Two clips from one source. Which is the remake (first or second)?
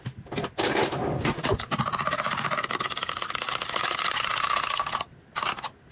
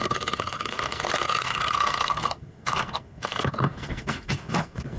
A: second